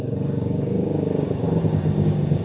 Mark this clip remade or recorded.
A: remade